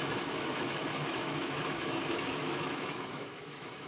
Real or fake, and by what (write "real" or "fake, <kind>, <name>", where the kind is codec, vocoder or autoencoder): fake, autoencoder, DAC-VAE